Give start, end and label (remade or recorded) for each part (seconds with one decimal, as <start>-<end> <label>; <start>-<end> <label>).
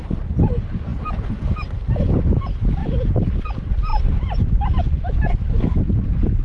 0.0-2.8 recorded; 2.8-3.4 remade; 3.4-3.9 recorded; 3.9-4.7 remade; 4.7-6.4 recorded